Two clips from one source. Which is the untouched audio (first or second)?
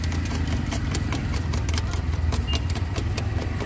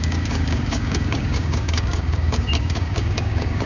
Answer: first